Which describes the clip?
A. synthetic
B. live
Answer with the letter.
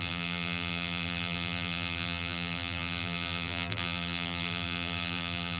A